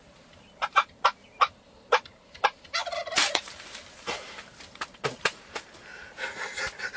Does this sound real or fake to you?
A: fake